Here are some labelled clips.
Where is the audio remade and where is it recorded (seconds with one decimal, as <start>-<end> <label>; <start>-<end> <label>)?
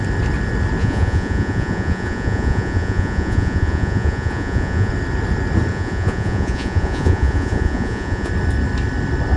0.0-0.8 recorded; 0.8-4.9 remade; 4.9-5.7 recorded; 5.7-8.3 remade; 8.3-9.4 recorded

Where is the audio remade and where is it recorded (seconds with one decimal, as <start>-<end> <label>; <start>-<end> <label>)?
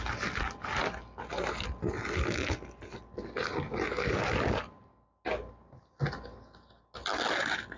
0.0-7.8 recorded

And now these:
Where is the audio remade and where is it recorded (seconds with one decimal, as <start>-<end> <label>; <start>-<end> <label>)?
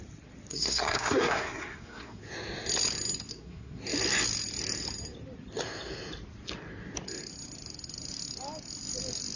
0.0-0.5 recorded; 0.5-2.2 remade; 2.2-3.3 recorded; 3.3-3.8 remade; 3.8-9.4 recorded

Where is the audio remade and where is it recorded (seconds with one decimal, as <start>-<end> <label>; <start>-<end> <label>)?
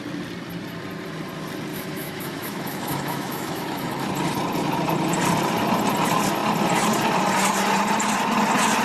0.0-1.7 recorded; 1.7-4.1 remade; 4.1-8.8 recorded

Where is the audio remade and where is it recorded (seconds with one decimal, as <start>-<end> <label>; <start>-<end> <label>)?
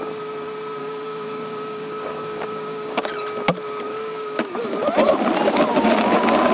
0.0-0.8 recorded; 0.8-3.1 remade; 3.1-3.9 recorded; 3.9-4.6 remade; 4.6-5.7 recorded; 5.7-6.5 remade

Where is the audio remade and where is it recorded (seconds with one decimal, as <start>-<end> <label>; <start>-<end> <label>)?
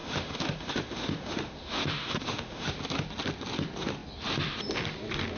0.0-2.7 remade; 2.7-5.4 recorded